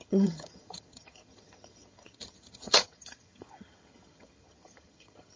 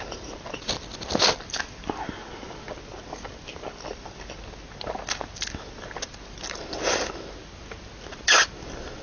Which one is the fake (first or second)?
first